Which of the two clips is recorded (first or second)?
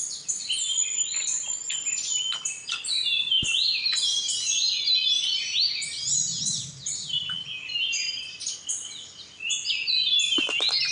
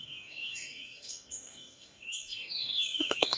first